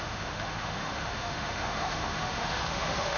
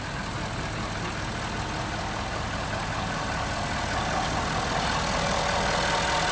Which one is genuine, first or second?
second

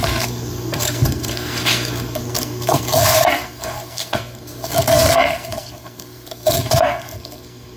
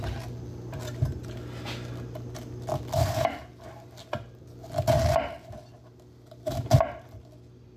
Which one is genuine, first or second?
second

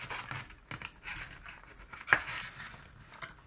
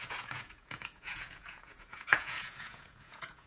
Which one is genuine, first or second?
first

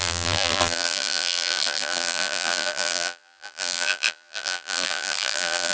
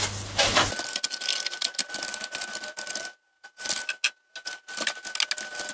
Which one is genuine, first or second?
second